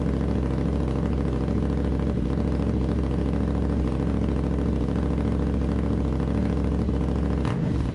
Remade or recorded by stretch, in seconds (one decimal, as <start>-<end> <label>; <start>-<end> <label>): 0.0-6.4 recorded; 6.4-7.9 remade